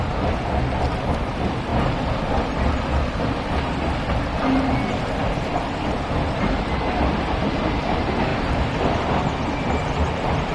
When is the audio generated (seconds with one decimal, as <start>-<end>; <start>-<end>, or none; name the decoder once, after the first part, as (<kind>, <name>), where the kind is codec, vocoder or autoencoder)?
none